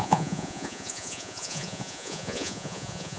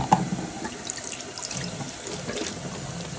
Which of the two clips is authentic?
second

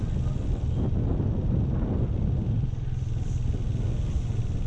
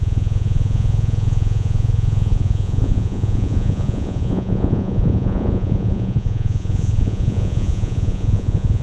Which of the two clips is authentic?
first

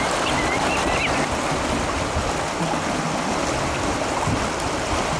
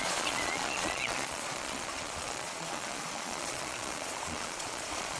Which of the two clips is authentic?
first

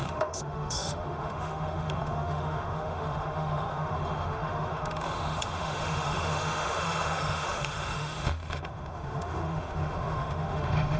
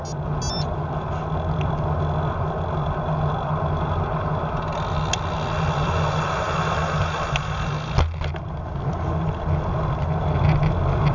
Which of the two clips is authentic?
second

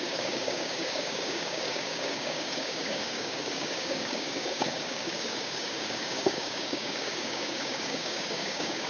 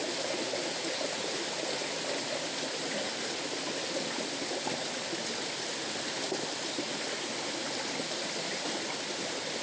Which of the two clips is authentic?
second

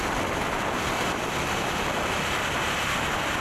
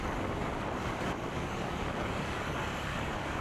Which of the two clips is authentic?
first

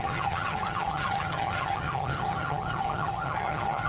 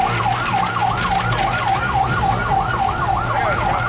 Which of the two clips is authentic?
second